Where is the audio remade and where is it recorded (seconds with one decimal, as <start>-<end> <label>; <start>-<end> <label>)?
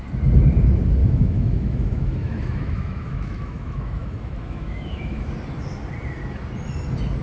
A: 0.0-1.0 recorded; 1.0-5.3 remade; 5.3-7.2 recorded